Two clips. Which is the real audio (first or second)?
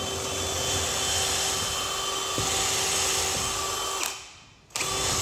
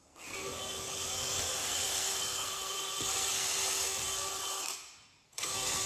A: first